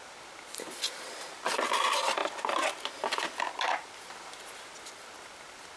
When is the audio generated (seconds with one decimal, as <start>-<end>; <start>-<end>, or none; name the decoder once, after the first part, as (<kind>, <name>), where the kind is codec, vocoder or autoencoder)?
none